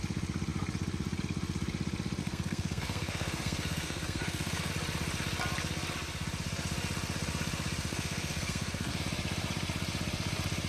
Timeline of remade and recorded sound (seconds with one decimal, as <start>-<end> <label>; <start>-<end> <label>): 0.0-2.2 recorded; 2.2-4.7 remade; 4.7-7.9 recorded; 7.9-9.0 remade; 9.0-10.7 recorded